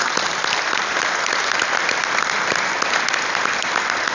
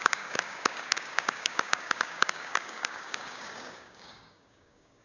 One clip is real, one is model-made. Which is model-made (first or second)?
second